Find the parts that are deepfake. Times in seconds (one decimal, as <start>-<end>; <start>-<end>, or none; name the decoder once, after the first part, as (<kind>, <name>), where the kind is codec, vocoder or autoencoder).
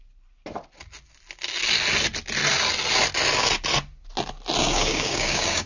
4.6-5.7 (codec, DAC)